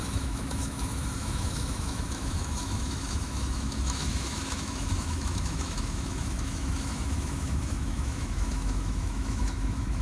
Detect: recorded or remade remade